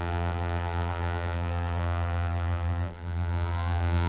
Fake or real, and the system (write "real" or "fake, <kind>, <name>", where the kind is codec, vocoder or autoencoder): fake, vocoder, BigVGAN v2